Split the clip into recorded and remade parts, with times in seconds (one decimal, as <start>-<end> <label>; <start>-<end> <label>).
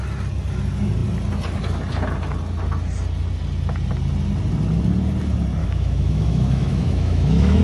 0.0-5.6 recorded; 5.6-7.6 remade